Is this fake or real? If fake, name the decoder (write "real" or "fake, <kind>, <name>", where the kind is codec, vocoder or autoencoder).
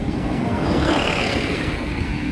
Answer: fake, codec, SNAC